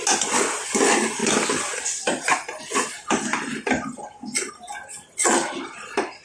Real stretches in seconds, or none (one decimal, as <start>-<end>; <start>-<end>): 0.0-6.2